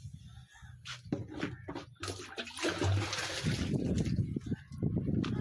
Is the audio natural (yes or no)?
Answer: yes